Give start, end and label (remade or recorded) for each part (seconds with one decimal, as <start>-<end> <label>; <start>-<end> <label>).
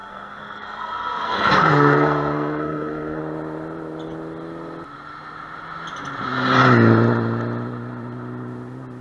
0.0-3.2 remade; 3.2-9.0 recorded